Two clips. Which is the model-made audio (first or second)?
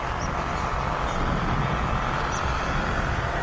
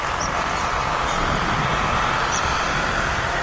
second